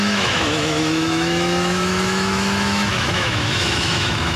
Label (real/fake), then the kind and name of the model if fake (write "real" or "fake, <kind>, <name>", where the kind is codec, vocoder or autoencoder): fake, autoencoder, DAC-VAE